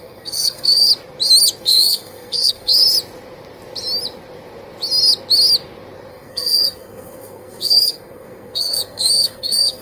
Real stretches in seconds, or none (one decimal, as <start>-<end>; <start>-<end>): 0.9-1.6; 2.8-6.1